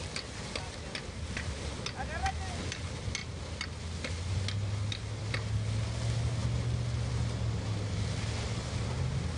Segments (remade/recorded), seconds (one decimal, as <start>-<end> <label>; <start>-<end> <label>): 0.0-9.4 recorded